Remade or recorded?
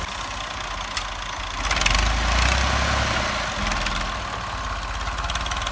recorded